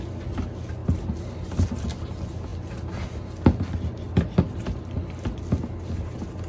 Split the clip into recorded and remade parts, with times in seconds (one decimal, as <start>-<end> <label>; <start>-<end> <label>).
0.0-2.5 recorded; 2.5-3.2 remade; 3.2-6.5 recorded